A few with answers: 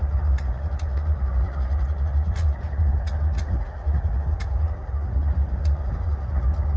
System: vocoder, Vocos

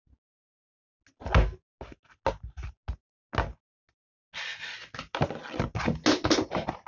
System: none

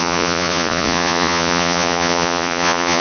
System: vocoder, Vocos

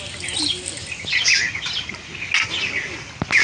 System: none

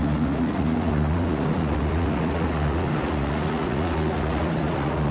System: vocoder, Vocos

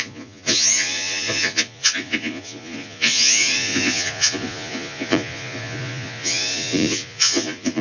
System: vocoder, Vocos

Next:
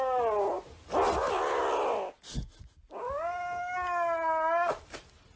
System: none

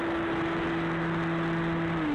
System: none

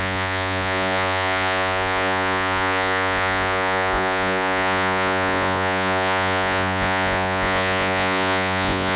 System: vocoder, Vocos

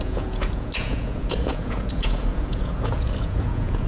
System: vocoder, Vocos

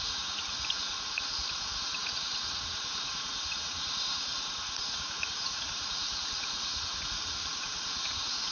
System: vocoder, Vocos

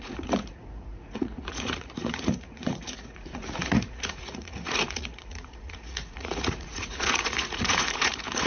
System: vocoder, Vocos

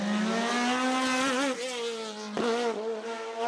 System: none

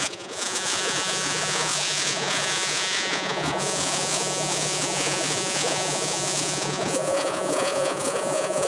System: vocoder, Vocos